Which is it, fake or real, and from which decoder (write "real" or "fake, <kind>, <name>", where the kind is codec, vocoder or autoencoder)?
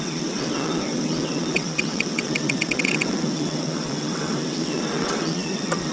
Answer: fake, vocoder, WaveNeXt